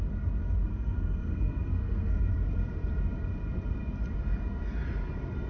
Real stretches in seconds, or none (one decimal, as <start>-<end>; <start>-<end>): 0.0-0.7; 2.3-5.5